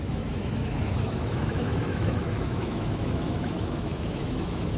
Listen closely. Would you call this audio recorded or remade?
remade